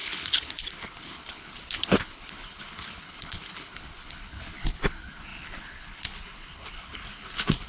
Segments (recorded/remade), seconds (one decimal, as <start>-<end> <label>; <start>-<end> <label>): 0.0-7.7 remade